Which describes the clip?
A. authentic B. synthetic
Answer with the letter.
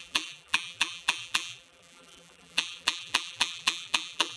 B